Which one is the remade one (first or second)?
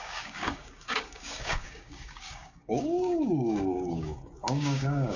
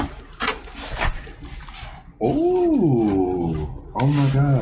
first